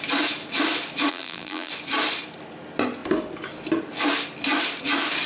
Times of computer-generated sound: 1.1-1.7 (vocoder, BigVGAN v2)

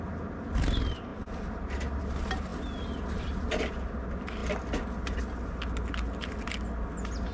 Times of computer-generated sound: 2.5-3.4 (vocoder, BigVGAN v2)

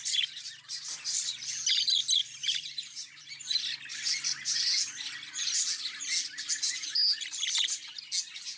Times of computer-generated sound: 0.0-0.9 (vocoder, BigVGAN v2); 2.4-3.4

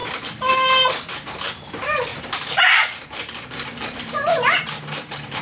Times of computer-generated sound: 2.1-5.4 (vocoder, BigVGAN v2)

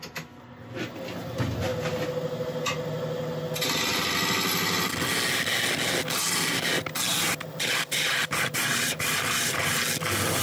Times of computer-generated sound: 7.1-9.8 (vocoder, BigVGAN v2)

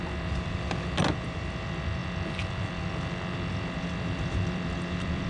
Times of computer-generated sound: 0.0-2.0 (vocoder, BigVGAN v2); 3.5-5.3

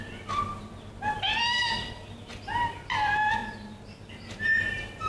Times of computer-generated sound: none